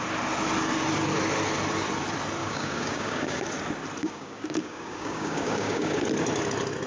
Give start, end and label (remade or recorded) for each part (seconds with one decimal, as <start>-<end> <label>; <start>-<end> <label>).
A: 0.0-2.4 recorded; 2.4-3.4 remade; 3.4-4.0 recorded; 4.0-6.0 remade; 6.0-6.9 recorded